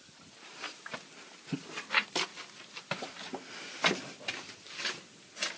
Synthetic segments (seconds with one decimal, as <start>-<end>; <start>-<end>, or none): none